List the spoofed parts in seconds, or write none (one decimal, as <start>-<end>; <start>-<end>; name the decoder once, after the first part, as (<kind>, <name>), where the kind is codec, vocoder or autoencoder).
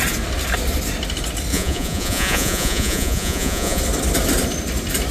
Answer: 1.5-3.8 (vocoder, Vocos)